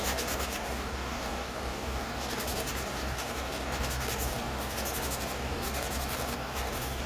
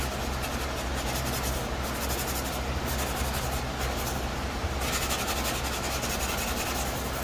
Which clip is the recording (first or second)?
second